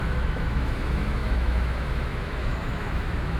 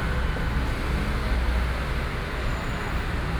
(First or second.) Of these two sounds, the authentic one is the second